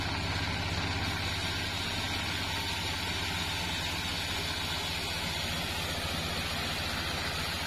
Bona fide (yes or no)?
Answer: yes